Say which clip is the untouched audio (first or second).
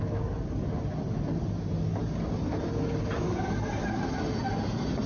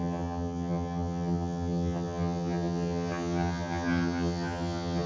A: first